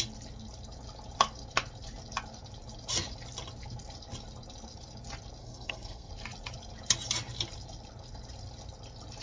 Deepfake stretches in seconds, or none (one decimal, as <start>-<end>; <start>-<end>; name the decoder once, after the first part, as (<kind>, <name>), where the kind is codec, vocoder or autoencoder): 5.4-6.1 (codec, SNAC)